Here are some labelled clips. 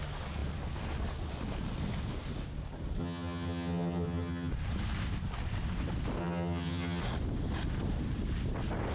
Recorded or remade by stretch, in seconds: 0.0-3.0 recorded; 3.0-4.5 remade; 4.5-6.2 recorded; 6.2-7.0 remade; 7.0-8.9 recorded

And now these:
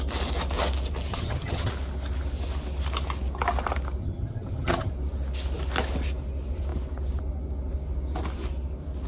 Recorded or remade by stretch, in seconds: 0.0-1.1 recorded; 1.1-1.7 remade; 1.7-4.0 recorded; 4.0-4.9 remade; 4.9-9.1 recorded

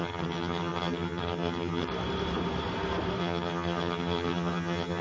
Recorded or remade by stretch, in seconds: 0.0-1.9 remade; 1.9-3.2 recorded; 3.2-5.0 remade

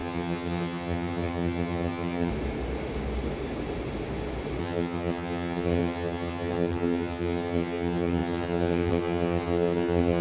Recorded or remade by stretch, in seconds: 0.0-2.3 remade; 2.3-4.6 recorded; 4.6-10.2 remade